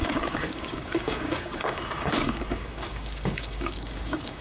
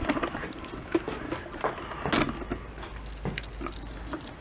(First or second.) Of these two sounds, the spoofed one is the first